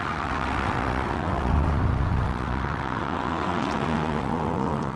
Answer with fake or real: fake